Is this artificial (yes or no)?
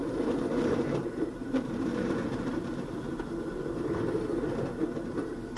yes